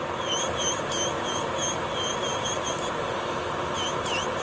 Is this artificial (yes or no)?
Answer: no